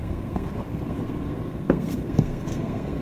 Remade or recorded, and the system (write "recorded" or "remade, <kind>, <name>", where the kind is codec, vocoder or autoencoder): remade, codec, SNAC